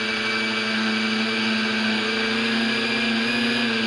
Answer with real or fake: real